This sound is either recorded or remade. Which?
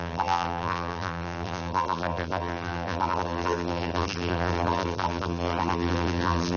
remade